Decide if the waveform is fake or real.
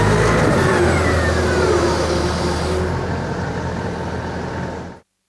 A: real